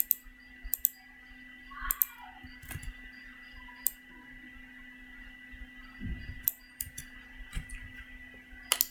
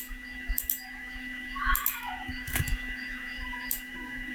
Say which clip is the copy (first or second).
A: second